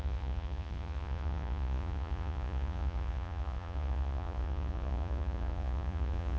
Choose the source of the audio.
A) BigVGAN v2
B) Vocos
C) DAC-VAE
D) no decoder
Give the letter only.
B